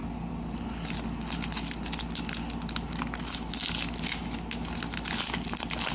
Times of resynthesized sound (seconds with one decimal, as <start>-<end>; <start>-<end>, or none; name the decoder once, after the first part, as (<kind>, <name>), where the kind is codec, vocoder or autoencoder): none